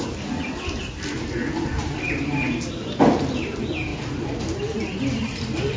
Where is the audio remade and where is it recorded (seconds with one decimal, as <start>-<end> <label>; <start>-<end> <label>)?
0.0-5.8 recorded